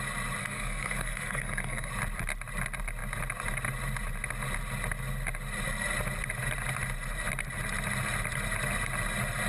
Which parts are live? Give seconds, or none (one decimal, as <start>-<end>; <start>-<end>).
0.0-0.4; 1.9-9.5